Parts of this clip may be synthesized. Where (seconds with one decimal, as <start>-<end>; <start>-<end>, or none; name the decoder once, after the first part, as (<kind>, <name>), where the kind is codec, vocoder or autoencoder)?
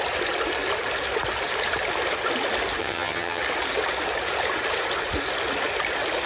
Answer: 2.8-3.4 (vocoder, HiFi-GAN)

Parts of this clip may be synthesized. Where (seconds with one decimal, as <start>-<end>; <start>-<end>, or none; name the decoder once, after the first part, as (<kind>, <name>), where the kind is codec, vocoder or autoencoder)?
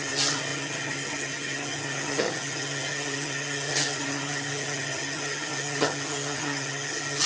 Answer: 0.0-7.3 (vocoder, HiFi-GAN)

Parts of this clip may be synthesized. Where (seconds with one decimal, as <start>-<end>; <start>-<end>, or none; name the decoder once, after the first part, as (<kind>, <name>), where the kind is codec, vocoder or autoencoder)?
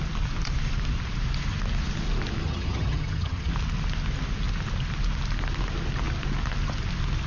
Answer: 2.4-3.5 (vocoder, HiFi-GAN)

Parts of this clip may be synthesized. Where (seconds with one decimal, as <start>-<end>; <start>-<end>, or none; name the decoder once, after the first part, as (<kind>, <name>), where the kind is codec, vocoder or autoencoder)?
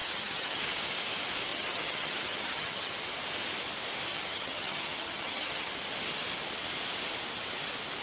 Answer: 0.0-0.6 (vocoder, HiFi-GAN); 1.5-2.9; 4.1-5.7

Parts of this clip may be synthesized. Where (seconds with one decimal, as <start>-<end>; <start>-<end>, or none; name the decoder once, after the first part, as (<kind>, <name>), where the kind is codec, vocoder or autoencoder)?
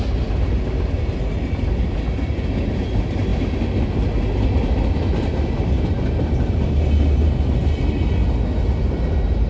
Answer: none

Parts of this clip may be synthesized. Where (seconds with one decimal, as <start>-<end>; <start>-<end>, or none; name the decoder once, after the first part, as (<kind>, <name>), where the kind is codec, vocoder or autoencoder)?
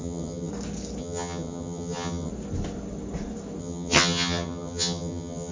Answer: 0.0-0.5 (vocoder, HiFi-GAN); 1.0-2.3; 3.6-5.5